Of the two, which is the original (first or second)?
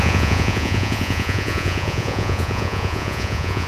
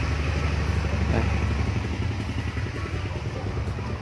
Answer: second